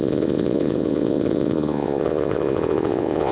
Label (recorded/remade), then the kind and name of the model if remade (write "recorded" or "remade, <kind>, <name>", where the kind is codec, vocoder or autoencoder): remade, vocoder, Vocos